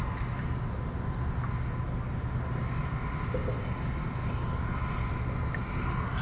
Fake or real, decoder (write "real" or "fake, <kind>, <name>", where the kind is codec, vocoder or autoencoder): real